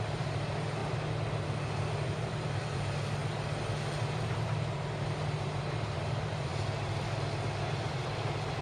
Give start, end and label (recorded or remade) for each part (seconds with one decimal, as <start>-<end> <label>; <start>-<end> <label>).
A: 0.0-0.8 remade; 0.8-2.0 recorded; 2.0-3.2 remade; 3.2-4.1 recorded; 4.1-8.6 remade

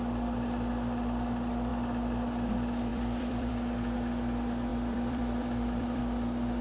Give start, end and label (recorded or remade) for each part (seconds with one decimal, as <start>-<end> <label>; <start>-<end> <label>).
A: 0.0-2.9 recorded; 2.9-3.5 remade; 3.5-4.7 recorded; 4.7-6.0 remade; 6.0-6.6 recorded

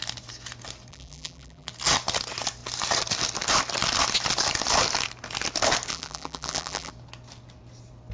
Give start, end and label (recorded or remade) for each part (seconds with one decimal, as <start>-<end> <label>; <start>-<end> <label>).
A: 0.0-0.9 recorded; 0.9-1.7 remade; 1.7-5.9 recorded; 5.9-6.9 remade; 6.9-8.1 recorded

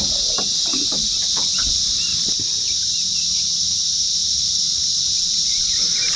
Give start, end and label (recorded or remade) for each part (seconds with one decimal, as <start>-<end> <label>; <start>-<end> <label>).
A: 0.0-2.1 recorded; 2.1-4.8 remade; 4.8-6.2 recorded

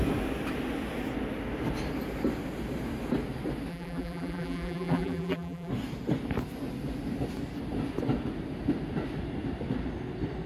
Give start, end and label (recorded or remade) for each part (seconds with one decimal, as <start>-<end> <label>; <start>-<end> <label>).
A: 0.0-3.7 recorded; 3.7-5.7 remade; 5.7-10.5 recorded

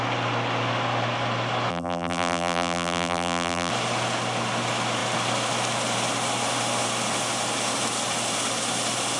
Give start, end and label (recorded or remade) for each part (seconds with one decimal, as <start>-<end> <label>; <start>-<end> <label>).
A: 0.0-1.7 recorded; 1.7-3.7 remade; 3.7-9.2 recorded

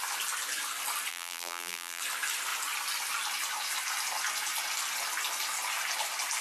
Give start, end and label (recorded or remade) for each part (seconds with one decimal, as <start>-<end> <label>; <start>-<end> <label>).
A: 0.0-1.1 recorded; 1.1-2.0 remade; 2.0-6.4 recorded

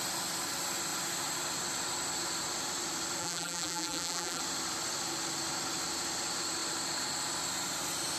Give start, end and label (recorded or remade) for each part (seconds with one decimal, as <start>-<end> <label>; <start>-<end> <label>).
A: 0.0-3.2 recorded; 3.2-4.4 remade; 4.4-8.2 recorded